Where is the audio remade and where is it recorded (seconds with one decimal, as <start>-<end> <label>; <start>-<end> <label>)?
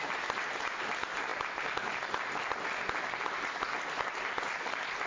0.0-5.1 recorded